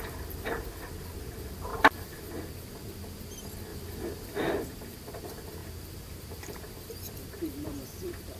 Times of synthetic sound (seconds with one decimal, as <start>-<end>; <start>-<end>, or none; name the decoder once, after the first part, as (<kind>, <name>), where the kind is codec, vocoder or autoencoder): 1.7-2.3 (vocoder, BigVGAN v2); 5.6-8.4